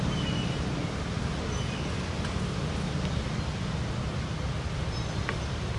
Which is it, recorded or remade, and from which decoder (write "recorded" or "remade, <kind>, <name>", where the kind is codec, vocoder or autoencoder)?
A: recorded